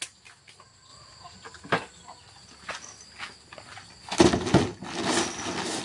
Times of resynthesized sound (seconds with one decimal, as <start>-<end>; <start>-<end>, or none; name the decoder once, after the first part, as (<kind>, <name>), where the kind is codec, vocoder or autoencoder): none